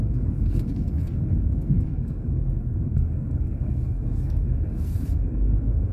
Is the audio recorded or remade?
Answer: remade